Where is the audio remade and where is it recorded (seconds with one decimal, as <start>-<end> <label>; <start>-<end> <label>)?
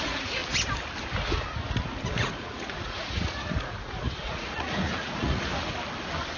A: 0.0-0.4 remade; 0.4-2.2 recorded; 2.2-5.5 remade; 5.5-6.4 recorded